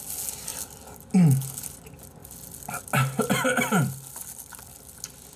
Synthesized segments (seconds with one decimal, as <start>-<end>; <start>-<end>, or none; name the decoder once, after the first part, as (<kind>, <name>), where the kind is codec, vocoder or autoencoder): none